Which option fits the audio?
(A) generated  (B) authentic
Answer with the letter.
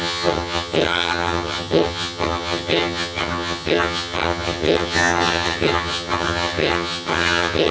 A